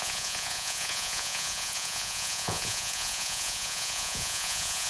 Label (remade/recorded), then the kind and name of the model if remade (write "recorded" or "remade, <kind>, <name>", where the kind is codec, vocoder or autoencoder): remade, vocoder, Vocos